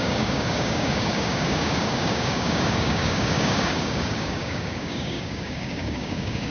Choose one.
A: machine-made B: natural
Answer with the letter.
A